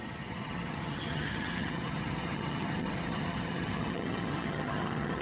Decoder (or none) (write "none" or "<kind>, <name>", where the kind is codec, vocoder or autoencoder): vocoder, HiFi-GAN